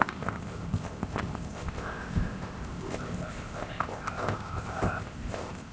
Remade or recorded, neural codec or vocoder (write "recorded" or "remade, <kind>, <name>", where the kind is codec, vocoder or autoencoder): remade, codec, ZipCodec